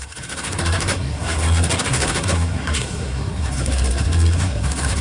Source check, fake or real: fake